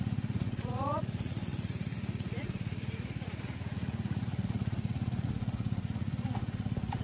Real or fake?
fake